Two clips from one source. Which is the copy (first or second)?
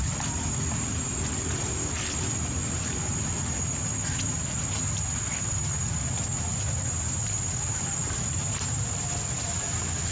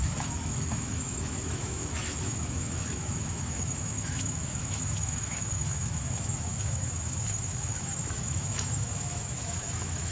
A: second